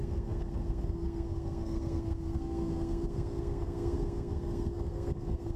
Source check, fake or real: fake